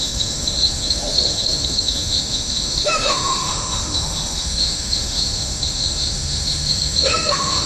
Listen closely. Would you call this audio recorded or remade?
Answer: remade